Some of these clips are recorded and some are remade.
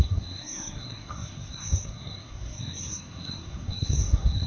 remade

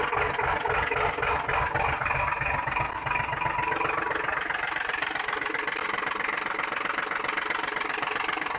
recorded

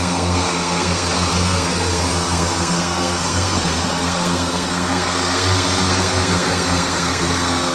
remade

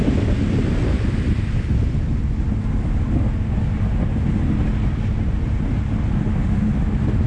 recorded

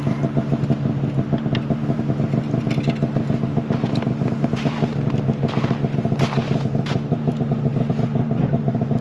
recorded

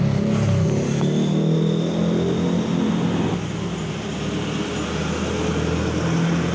recorded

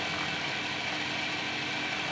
recorded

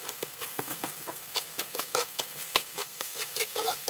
remade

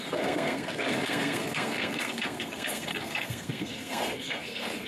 remade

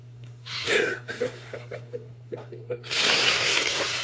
remade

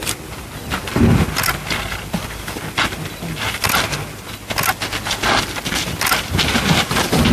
recorded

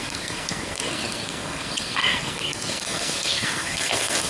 remade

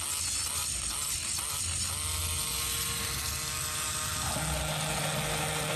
recorded